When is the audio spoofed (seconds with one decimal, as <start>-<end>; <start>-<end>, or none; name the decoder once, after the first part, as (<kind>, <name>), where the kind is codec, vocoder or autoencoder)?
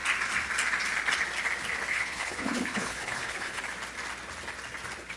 1.9-3.6 (codec, HILCodec)